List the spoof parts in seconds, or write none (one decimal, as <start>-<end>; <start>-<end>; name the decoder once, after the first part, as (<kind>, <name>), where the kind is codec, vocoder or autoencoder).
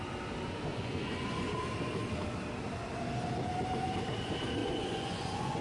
0.7-1.5 (vocoder, Vocos); 4.6-5.6